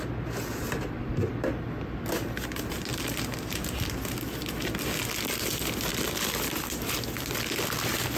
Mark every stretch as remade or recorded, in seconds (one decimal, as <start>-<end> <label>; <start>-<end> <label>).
0.0-5.9 recorded; 5.9-6.9 remade; 6.9-8.2 recorded